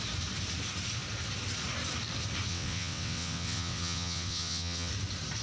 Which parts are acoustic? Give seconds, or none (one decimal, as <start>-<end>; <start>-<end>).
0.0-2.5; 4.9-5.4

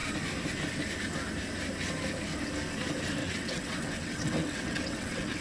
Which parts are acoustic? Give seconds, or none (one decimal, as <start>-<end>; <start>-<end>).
0.0-3.2

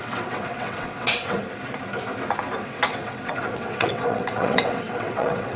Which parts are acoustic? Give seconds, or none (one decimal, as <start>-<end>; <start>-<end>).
1.4-2.6

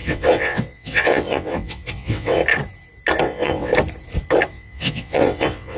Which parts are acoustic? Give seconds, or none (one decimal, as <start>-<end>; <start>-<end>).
2.4-3.2; 3.7-4.5

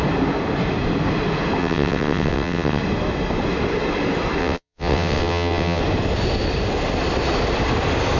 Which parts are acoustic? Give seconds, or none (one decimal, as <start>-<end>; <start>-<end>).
0.0-1.6; 2.8-4.4; 5.8-8.2

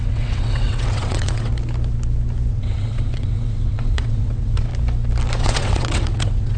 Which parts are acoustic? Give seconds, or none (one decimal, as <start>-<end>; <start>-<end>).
1.5-2.5; 4.7-5.4

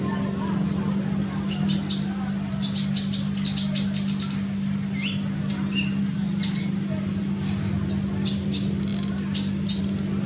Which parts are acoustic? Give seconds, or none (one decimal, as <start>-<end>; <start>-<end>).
0.0-10.3

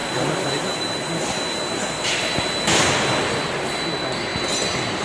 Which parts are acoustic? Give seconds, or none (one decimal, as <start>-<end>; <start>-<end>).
0.0-5.0